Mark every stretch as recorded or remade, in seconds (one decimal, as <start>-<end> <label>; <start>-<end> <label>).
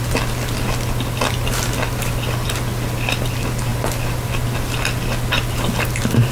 0.0-6.3 recorded